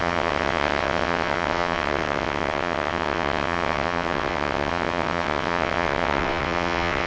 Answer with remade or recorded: remade